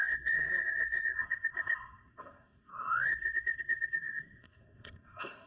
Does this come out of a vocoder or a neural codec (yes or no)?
yes